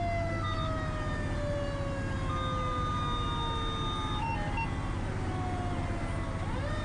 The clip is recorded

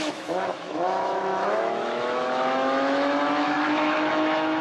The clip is remade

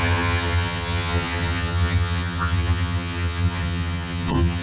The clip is remade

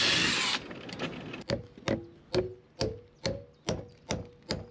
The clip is recorded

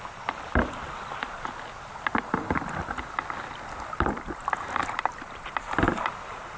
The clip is recorded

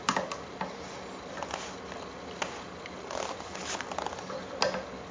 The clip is recorded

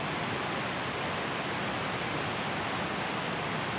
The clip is recorded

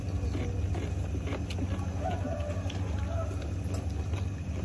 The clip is recorded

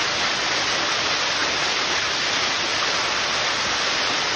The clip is recorded